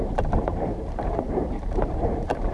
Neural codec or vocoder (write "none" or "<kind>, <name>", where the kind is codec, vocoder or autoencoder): vocoder, BigVGAN v2